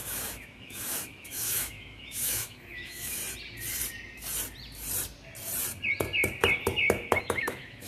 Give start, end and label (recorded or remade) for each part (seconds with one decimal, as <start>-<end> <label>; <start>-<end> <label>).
0.0-3.2 remade; 3.2-7.2 recorded; 7.2-7.9 remade